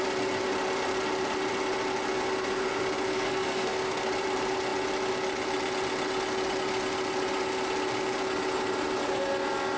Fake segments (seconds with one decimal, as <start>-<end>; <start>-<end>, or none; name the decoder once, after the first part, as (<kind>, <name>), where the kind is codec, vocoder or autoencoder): 3.1-4.1 (codec, SNAC)